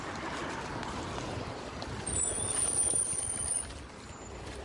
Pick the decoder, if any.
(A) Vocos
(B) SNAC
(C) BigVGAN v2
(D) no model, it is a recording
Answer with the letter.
D